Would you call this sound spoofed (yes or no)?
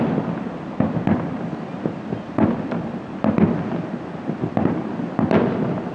no